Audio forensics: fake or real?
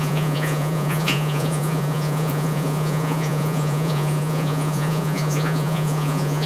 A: fake